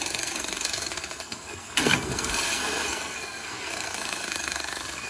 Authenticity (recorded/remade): remade